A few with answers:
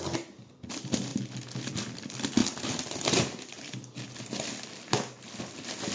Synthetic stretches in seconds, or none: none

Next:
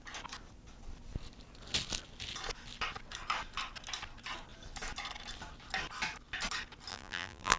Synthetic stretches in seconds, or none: 6.9-7.6 (vocoder, BigVGAN v2)

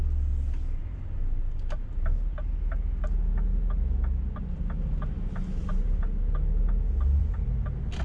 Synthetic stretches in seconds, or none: none

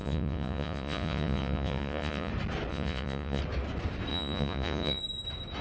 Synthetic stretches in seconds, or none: 0.0-2.3 (vocoder, Vocos); 2.7-3.4; 4.1-5.0

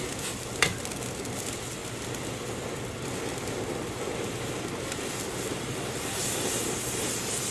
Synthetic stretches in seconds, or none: none

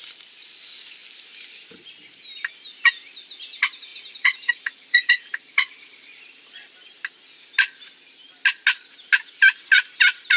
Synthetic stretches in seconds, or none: 3.9-6.3 (vocoder, BigVGAN v2)

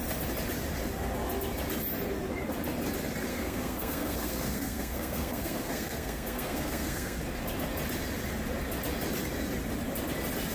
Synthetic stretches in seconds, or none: 3.3-7.2 (codec, SNAC)